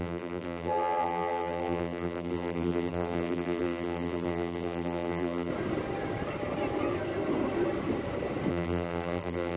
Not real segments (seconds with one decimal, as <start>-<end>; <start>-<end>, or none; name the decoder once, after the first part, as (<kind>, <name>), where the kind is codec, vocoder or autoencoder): 0.0-5.5 (vocoder, BigVGAN v2); 8.5-9.6